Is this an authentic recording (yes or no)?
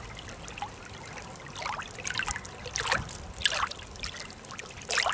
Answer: yes